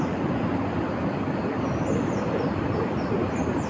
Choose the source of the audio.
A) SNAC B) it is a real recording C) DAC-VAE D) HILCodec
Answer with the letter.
B